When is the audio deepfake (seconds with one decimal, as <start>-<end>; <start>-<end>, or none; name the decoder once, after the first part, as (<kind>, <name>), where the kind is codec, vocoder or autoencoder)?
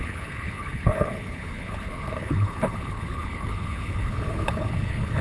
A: 0.0-5.2 (codec, HILCodec)